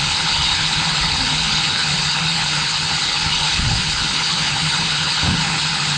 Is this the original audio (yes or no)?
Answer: no